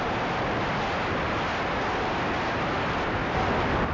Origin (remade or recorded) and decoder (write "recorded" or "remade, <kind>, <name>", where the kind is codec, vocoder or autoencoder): recorded